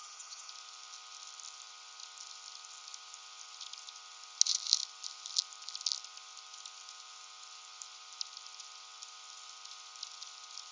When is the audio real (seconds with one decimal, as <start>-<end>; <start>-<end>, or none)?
0.5-10.7